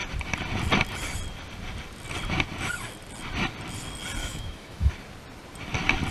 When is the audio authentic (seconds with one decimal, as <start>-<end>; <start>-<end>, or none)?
0.0-4.2; 4.9-6.1